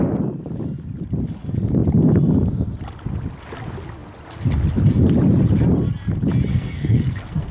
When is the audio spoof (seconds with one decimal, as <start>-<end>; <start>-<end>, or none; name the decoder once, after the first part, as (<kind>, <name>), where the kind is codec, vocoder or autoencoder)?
6.5-7.5 (codec, SNAC)